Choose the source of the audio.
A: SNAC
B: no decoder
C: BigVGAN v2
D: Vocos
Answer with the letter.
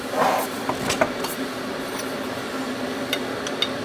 B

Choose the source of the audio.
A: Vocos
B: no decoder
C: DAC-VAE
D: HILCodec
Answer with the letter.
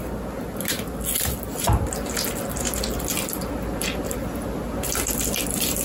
B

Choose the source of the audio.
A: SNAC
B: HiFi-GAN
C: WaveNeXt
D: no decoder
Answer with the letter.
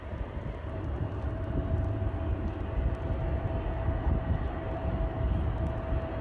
D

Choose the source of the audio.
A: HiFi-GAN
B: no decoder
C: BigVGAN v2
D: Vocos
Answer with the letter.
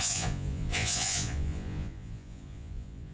D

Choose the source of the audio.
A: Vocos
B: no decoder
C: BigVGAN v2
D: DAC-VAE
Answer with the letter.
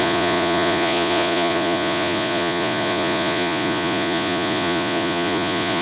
A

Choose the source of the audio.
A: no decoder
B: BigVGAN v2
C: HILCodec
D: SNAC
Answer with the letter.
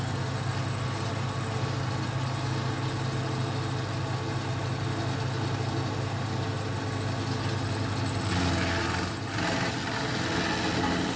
A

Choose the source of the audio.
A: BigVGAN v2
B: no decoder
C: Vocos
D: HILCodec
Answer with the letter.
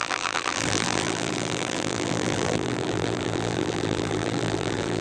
A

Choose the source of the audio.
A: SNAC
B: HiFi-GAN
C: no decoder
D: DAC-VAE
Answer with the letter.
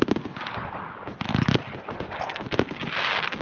C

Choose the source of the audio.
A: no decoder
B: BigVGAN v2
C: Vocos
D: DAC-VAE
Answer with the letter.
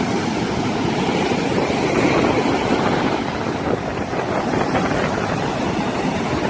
A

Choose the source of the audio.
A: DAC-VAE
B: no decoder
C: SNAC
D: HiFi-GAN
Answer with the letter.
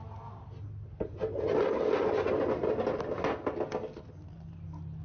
B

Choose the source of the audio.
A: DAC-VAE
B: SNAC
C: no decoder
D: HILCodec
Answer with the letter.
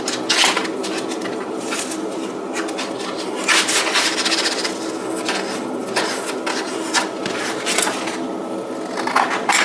C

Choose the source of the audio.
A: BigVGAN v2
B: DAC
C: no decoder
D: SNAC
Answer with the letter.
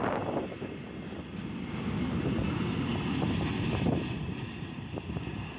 C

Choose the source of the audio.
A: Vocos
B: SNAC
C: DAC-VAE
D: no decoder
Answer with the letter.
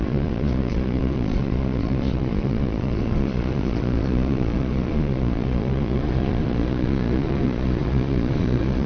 A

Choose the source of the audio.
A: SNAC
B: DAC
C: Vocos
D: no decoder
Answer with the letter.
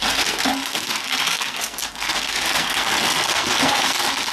A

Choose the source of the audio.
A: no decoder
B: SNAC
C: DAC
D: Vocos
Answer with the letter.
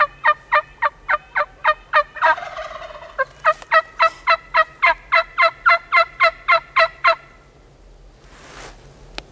A